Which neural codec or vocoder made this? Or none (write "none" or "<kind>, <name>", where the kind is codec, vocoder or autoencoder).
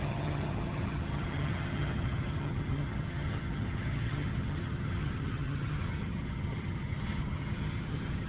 vocoder, HiFi-GAN